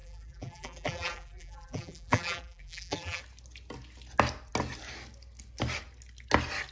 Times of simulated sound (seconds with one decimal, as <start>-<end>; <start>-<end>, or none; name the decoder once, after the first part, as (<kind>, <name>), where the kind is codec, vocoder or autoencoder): 0.0-3.2 (vocoder, BigVGAN v2)